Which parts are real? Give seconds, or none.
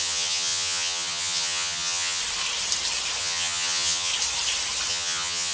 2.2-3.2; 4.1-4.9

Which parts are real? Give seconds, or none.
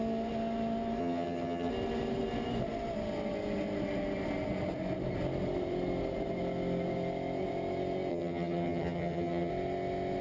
0.0-1.0; 1.7-8.1; 9.5-10.2